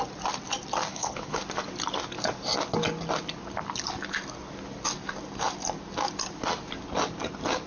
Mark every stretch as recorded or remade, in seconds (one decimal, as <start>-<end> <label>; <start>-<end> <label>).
0.0-0.9 recorded; 0.9-1.4 remade; 1.4-7.7 recorded